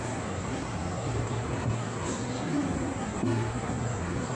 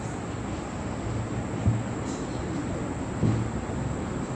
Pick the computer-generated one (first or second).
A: first